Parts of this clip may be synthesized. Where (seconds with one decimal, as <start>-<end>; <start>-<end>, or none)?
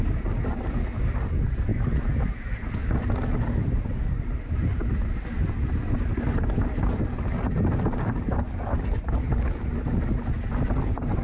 none